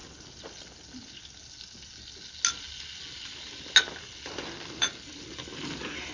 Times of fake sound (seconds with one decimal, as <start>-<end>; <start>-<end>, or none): none